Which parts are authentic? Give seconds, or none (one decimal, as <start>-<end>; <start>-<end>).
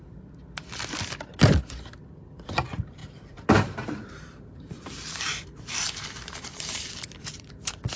0.0-3.0; 6.9-8.0